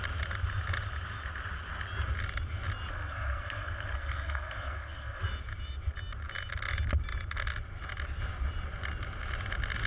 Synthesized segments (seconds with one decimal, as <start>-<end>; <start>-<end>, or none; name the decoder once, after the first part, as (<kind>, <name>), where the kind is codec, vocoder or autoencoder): 2.9-5.2 (codec, SNAC)